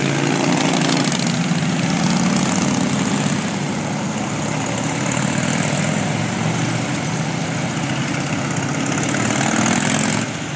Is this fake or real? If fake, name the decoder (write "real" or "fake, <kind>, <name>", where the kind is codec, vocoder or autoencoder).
real